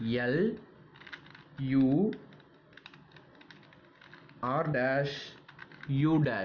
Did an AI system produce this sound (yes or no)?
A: no